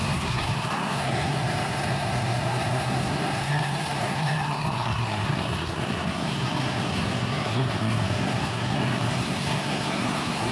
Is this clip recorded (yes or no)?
no